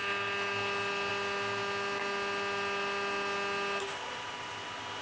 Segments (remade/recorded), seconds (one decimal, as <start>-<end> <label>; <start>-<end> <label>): 0.0-5.0 recorded